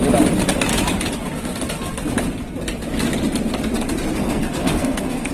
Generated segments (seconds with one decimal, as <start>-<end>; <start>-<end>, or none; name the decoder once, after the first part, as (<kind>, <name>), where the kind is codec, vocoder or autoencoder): 4.2-5.3 (codec, SNAC)